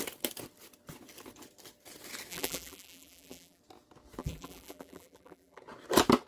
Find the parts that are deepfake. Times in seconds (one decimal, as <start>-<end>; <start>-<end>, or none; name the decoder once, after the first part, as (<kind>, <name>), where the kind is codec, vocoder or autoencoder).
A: 2.3-3.6 (vocoder, BigVGAN v2); 4.2-5.6